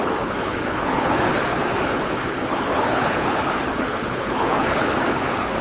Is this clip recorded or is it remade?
remade